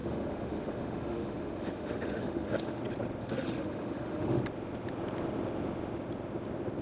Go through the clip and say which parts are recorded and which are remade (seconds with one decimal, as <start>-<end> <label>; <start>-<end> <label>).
0.0-2.8 remade; 2.8-3.2 recorded; 3.2-4.4 remade; 4.4-6.8 recorded